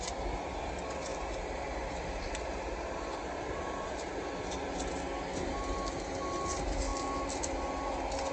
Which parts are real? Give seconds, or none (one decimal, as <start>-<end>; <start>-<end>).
0.0-1.1; 4.3-8.3